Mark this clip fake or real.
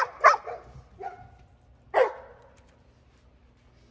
real